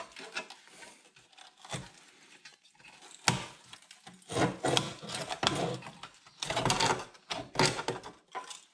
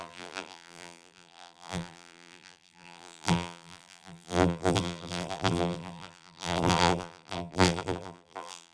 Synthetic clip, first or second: second